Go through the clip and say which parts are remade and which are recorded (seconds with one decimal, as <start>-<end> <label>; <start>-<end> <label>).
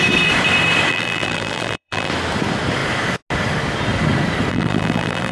0.0-0.9 recorded; 0.9-2.1 remade; 2.1-4.5 recorded; 4.5-5.3 remade